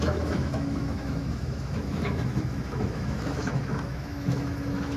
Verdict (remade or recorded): remade